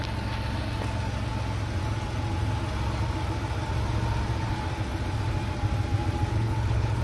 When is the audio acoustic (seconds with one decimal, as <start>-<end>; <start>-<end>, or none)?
0.0-6.3